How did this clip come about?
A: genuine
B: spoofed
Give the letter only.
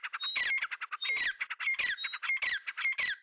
A